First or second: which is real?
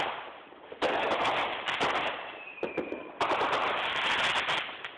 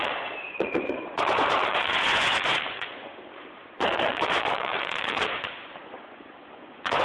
first